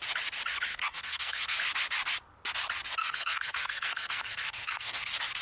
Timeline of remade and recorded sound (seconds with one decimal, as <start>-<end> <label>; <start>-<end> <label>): 0.0-0.7 recorded; 0.7-1.6 remade; 1.6-3.0 recorded; 3.0-5.0 remade; 5.0-5.4 recorded